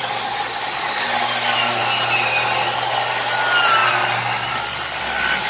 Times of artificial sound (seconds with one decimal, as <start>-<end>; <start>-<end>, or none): none